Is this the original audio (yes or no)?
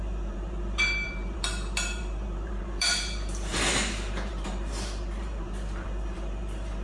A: no